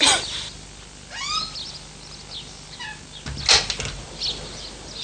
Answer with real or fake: real